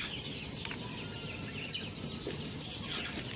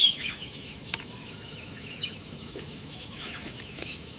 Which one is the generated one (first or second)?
second